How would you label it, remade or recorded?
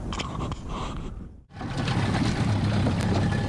recorded